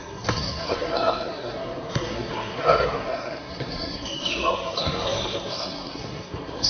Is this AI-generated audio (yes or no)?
yes